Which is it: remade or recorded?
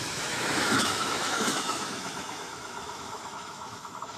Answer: remade